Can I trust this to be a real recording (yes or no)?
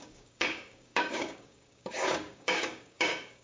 no